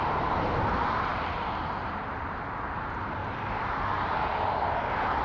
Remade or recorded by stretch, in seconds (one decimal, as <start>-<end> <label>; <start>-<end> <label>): 0.0-1.1 remade; 1.1-1.8 recorded; 1.8-3.2 remade; 3.2-5.2 recorded